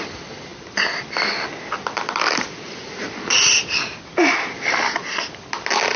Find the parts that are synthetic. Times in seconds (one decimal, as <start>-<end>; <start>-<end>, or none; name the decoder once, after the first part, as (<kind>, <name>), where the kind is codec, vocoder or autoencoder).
none